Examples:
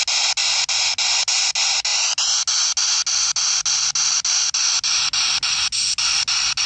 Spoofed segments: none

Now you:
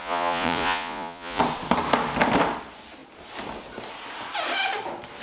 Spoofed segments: 0.0-1.4 (vocoder, Vocos)